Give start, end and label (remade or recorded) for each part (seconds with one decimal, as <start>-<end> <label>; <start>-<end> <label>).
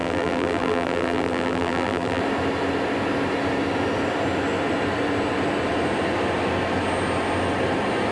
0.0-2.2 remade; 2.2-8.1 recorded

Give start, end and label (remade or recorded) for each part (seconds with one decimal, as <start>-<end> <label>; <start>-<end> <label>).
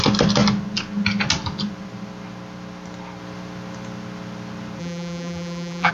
0.0-4.8 recorded; 4.8-5.9 remade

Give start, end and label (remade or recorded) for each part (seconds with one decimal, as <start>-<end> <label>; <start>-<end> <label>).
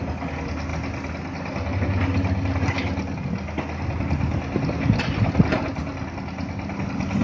0.0-7.2 recorded